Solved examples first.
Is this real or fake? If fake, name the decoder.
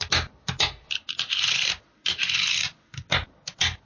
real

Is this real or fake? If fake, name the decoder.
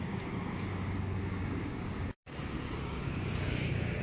fake, codec, DAC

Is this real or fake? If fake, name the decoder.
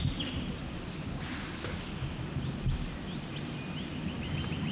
real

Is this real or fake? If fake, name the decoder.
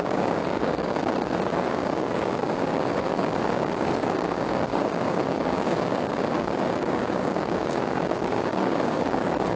fake, codec, DAC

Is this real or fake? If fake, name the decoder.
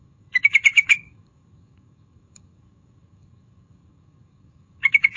fake, codec, DAC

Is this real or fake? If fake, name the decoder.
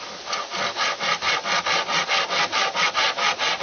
real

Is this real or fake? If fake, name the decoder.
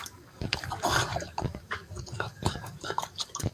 fake, codec, DAC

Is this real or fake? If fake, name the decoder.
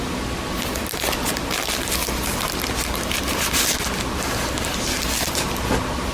real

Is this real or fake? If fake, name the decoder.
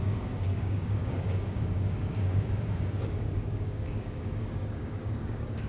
fake, codec, DAC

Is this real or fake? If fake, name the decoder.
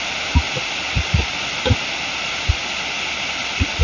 real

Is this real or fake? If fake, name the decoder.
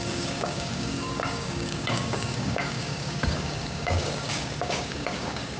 fake, codec, DAC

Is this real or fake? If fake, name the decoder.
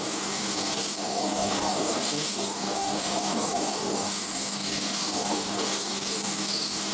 fake, codec, DAC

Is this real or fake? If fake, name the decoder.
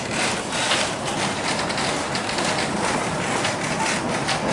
real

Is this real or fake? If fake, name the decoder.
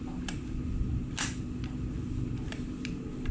real